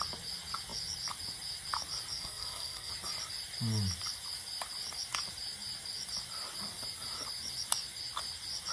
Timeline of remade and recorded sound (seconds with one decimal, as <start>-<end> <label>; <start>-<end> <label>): 0.0-2.1 recorded; 2.1-2.9 remade; 2.9-8.7 recorded